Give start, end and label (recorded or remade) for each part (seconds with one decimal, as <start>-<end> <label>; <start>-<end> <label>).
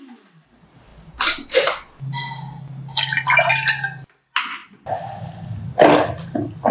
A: 0.0-6.7 recorded